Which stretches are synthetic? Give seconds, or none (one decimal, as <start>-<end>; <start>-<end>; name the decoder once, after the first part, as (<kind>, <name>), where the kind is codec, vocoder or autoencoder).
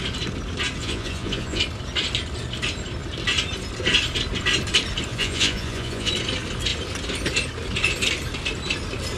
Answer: 0.8-1.6 (vocoder, Vocos); 5.1-6.1